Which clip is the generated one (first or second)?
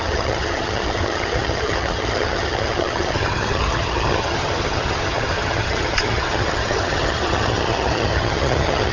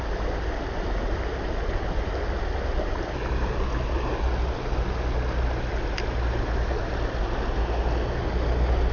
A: first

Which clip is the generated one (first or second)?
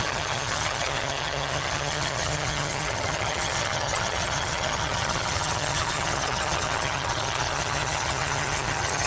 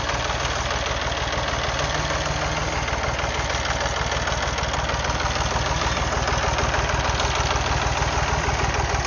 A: first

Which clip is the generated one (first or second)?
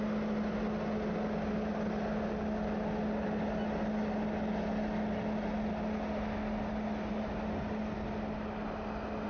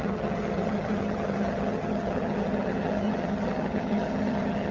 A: second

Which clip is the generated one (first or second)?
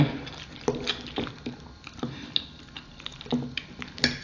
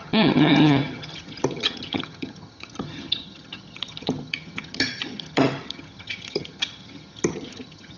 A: second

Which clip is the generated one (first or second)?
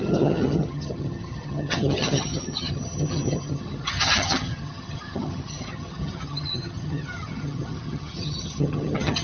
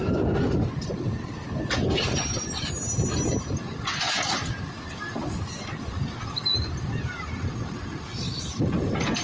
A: first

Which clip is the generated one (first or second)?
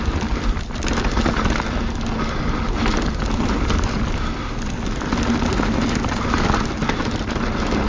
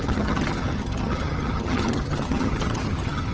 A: second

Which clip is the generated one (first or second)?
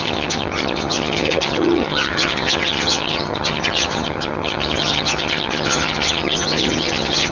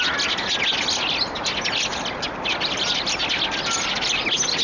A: first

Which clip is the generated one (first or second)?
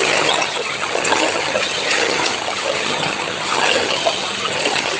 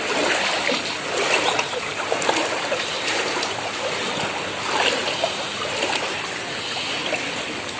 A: first